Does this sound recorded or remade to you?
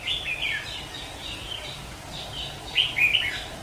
recorded